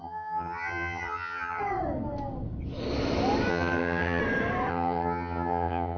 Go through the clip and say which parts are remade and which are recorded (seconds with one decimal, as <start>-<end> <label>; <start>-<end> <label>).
0.0-1.6 remade; 1.6-3.5 recorded; 3.5-4.2 remade; 4.2-4.7 recorded; 4.7-6.0 remade